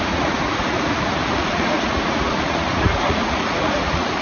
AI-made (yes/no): yes